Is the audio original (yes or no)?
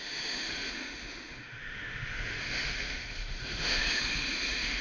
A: no